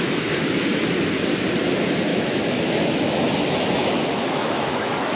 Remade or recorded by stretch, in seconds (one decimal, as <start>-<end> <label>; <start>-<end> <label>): 0.0-2.1 recorded; 2.1-5.2 remade